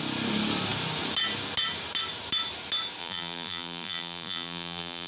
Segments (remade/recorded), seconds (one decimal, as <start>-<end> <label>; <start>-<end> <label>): 0.0-3.0 recorded; 3.0-5.1 remade